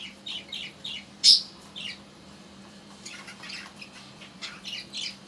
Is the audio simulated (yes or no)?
yes